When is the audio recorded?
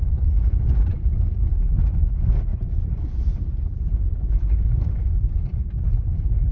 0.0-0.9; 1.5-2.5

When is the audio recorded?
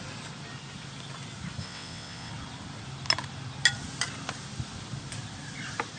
0.0-1.6; 2.3-6.0